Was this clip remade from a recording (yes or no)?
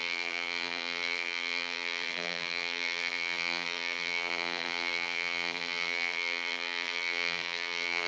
yes